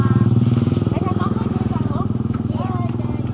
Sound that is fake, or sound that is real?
fake